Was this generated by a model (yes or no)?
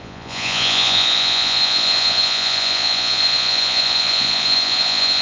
yes